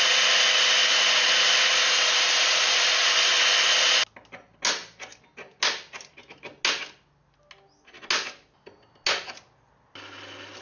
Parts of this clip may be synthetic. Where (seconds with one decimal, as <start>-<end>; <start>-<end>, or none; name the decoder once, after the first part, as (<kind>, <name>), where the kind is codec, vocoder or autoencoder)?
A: none